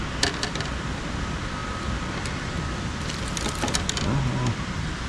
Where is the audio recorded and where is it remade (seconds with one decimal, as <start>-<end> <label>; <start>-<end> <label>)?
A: 0.0-5.1 recorded